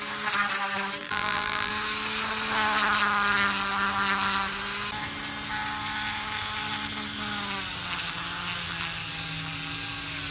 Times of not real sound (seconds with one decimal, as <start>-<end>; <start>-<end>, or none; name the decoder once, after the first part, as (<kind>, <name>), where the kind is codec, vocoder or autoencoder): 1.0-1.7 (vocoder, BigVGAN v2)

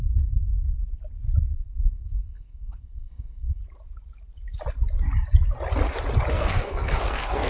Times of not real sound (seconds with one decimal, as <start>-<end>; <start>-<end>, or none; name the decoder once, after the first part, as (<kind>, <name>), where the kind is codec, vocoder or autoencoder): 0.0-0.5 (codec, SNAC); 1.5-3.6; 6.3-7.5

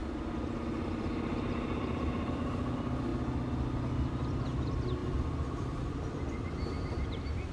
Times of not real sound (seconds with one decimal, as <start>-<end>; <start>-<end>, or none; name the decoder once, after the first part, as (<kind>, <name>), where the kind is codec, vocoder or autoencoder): 0.0-3.1 (vocoder, BigVGAN v2); 4.1-7.5